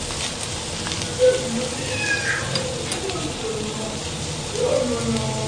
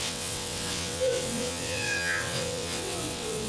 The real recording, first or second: first